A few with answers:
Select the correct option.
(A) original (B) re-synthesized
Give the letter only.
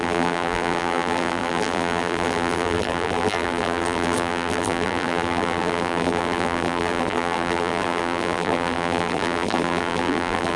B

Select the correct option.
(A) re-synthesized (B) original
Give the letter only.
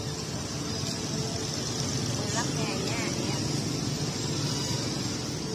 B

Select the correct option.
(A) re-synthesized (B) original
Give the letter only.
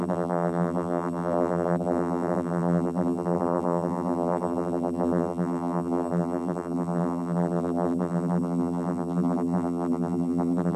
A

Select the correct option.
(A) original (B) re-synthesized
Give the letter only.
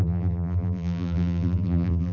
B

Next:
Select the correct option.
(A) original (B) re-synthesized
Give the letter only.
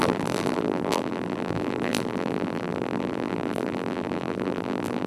B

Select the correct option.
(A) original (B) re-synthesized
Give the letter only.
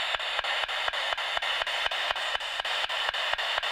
A